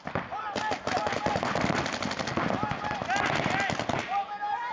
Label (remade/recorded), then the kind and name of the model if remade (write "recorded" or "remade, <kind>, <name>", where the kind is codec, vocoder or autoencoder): recorded